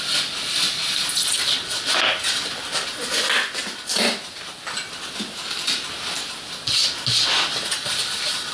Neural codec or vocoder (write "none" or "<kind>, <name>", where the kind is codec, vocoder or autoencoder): none